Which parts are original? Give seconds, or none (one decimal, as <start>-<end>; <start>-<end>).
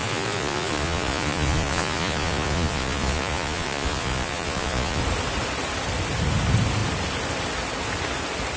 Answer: 5.0-8.6